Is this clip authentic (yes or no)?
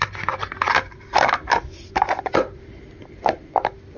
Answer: yes